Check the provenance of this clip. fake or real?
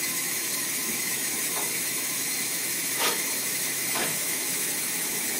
fake